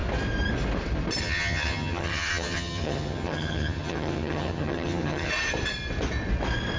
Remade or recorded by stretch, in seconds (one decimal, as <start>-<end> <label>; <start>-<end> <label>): 0.0-1.2 recorded; 1.2-5.3 remade; 5.3-6.8 recorded

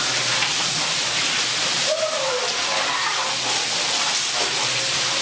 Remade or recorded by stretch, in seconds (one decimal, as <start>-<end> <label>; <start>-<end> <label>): 0.0-5.2 recorded

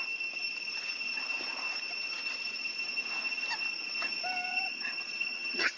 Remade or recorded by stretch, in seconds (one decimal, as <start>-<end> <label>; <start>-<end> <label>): 0.0-4.5 recorded; 4.5-5.8 remade